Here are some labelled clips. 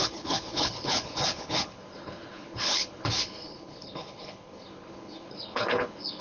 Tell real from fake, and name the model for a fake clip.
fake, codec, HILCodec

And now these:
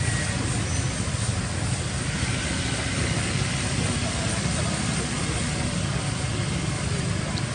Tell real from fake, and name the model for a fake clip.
real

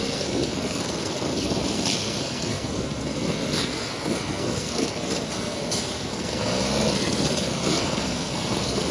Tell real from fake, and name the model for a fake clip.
fake, codec, SNAC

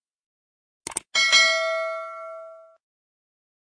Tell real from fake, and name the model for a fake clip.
real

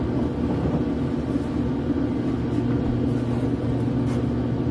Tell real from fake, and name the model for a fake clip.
real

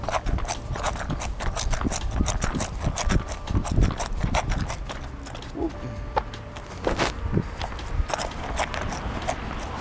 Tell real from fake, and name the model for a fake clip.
real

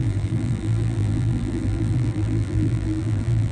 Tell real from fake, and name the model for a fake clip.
fake, vocoder, BigVGAN v2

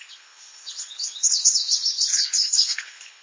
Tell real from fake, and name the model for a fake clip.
fake, codec, HILCodec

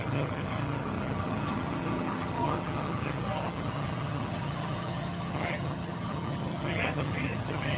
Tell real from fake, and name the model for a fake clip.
fake, vocoder, HiFi-GAN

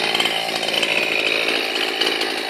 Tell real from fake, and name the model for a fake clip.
real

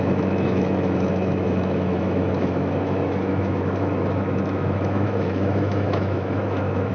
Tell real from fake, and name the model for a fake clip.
fake, autoencoder, DAC-VAE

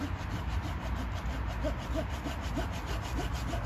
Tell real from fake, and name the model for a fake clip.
real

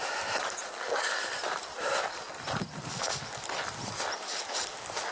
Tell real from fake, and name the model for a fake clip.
real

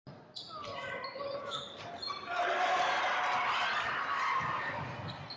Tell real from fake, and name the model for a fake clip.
real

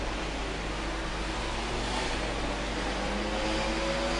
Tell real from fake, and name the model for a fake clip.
real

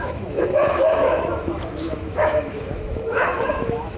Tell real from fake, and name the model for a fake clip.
fake, autoencoder, DAC-VAE